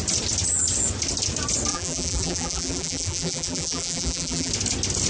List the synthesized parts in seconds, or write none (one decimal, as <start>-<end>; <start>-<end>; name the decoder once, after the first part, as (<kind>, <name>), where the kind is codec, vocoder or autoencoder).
1.7-4.5 (vocoder, BigVGAN v2)